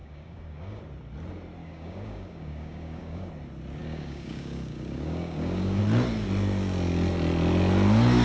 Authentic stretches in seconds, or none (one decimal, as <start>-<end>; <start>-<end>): 0.8-1.6; 3.3-3.8; 5.8-8.2